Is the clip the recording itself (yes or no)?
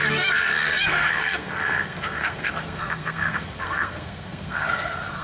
no